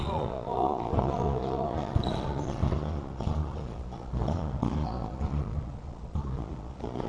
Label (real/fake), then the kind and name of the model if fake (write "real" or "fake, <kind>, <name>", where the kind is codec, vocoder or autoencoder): fake, vocoder, Vocos